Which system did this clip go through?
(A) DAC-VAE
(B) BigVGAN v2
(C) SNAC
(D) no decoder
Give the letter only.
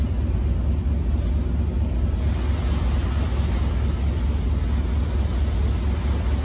D